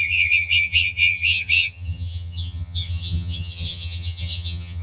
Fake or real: fake